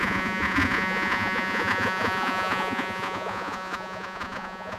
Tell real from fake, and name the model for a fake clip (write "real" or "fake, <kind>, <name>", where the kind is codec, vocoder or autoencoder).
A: fake, vocoder, Vocos